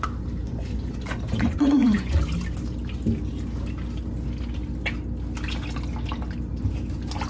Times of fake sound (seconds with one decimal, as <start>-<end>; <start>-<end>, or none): 0.4-2.2